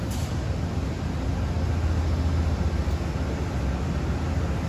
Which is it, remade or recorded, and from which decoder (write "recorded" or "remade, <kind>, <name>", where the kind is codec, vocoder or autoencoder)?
recorded